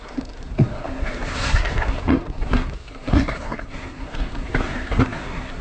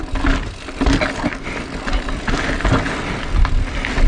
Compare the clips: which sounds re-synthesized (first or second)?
first